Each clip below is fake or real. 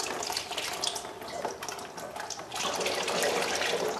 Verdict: real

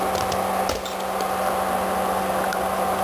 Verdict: real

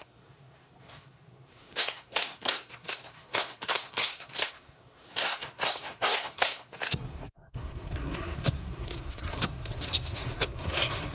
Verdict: fake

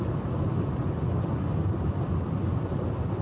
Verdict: real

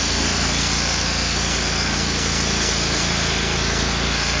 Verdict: fake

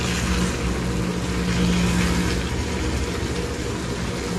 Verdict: real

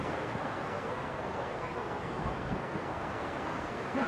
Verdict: fake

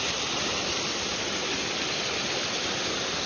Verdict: real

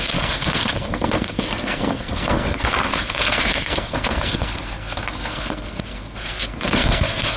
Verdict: fake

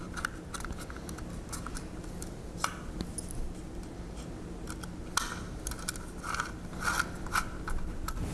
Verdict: real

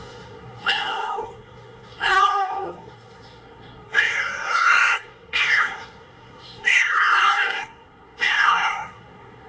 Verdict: fake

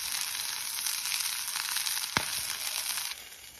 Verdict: real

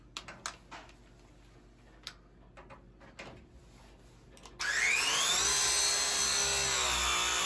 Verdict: real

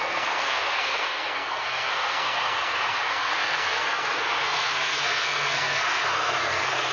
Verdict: fake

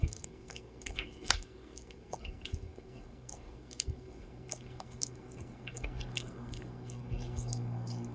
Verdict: fake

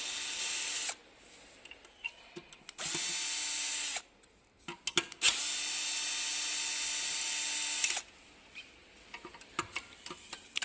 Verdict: real